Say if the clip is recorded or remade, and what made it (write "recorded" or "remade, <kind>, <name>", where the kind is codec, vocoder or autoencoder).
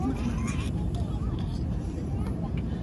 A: remade, vocoder, BigVGAN v2